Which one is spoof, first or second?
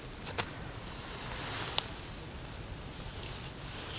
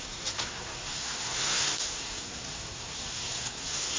second